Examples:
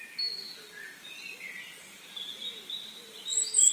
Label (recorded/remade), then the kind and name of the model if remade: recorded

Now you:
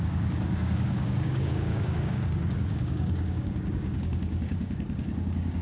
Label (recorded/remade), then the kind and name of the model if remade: remade, codec, DAC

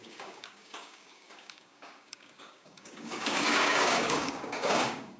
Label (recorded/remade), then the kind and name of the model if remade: remade, codec, DAC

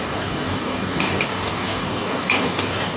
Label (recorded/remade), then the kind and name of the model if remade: remade, codec, DAC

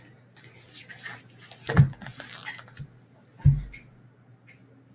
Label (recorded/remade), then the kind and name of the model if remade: recorded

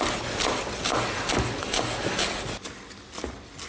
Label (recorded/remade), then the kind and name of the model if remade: recorded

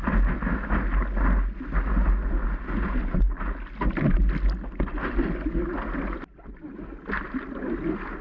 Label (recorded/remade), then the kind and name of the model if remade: recorded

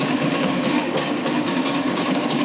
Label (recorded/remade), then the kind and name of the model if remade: remade, codec, DAC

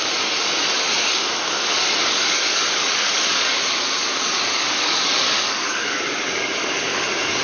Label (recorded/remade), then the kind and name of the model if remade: remade, codec, DAC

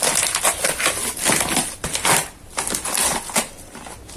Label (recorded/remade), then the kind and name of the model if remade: recorded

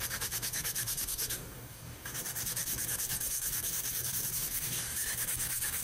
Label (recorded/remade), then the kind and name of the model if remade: remade, codec, DAC